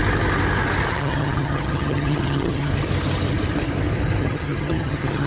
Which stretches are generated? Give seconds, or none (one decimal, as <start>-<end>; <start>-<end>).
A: 0.9-2.7; 4.2-5.3